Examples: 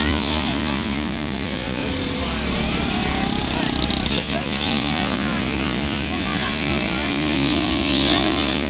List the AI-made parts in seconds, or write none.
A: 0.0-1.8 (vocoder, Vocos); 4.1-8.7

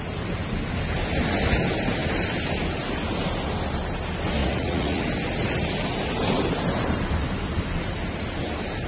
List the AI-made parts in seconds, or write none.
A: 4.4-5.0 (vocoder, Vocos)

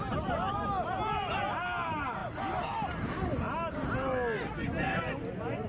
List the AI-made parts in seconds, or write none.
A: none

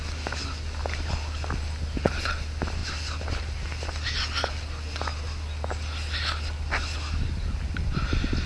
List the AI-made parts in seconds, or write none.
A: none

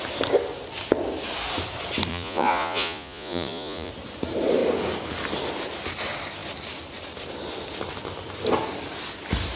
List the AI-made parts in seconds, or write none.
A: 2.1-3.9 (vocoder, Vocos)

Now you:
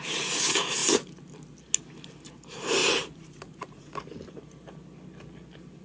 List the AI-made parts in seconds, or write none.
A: 2.8-3.9 (vocoder, Vocos)

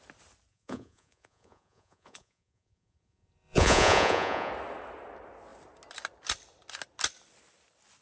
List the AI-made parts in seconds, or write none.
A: 0.5-4.5 (vocoder, Vocos)

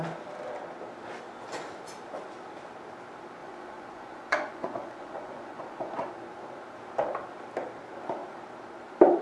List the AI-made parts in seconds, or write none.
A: 3.4-6.1 (vocoder, Vocos)